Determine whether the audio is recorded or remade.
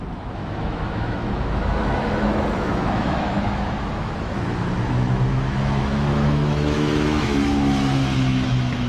remade